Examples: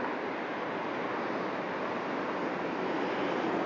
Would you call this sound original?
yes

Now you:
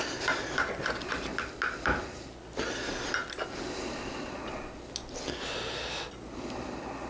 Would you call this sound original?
yes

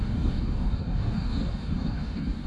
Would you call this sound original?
no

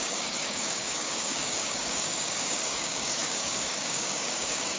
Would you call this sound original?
no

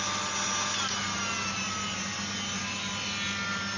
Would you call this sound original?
yes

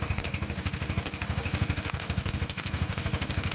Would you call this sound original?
no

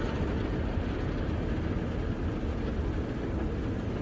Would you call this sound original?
yes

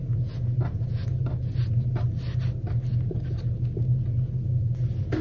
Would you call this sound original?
yes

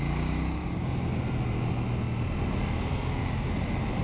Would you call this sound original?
yes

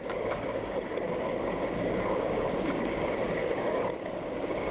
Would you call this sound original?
no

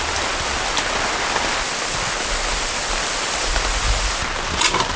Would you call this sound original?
yes